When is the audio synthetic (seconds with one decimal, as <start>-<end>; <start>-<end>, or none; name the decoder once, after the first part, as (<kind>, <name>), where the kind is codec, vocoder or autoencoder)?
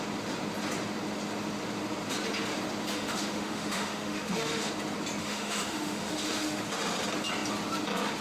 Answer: 2.9-4.7 (autoencoder, DAC-VAE); 5.2-6.6